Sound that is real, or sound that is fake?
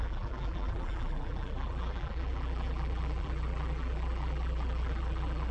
fake